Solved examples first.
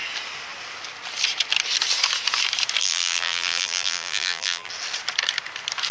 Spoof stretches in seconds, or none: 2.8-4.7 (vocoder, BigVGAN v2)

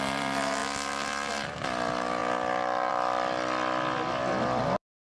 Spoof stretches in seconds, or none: 0.0-0.6 (vocoder, BigVGAN v2); 1.3-2.2; 2.9-5.0

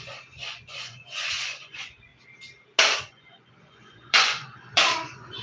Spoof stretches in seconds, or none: 0.0-2.1 (vocoder, Vocos); 3.0-5.4